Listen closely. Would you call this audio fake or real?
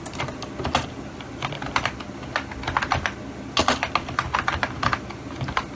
real